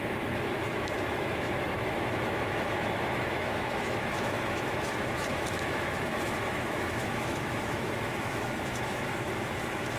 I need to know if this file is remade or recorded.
remade